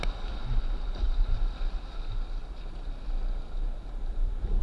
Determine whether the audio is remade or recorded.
recorded